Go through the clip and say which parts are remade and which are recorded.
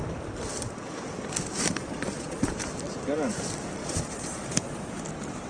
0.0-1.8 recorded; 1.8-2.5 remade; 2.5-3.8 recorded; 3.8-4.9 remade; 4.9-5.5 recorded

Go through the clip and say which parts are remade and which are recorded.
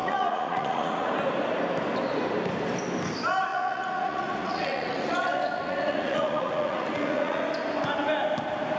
0.0-1.1 remade; 1.1-3.5 recorded; 3.5-7.4 remade; 7.4-8.8 recorded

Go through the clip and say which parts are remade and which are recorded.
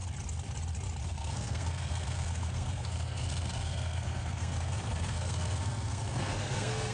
0.0-1.0 recorded; 1.0-6.9 remade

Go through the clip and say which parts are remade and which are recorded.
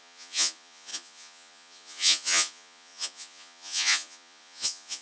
0.0-5.0 remade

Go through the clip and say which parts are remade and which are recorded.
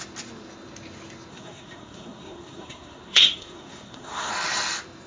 0.0-1.3 recorded; 1.3-4.3 remade; 4.3-5.1 recorded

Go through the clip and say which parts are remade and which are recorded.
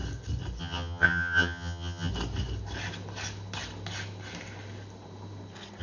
0.0-0.6 recorded; 0.6-2.1 remade; 2.1-5.8 recorded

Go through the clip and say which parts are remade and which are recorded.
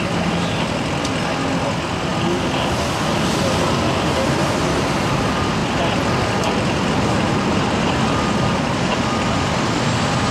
0.0-10.3 recorded